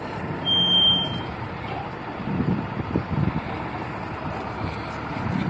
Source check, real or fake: real